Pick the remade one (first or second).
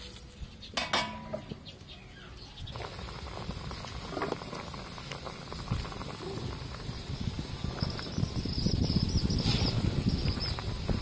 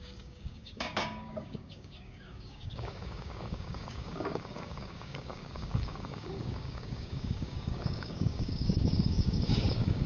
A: second